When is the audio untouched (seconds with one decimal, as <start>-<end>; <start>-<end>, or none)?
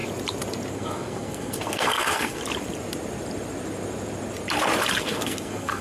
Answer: 0.0-0.7; 2.4-5.0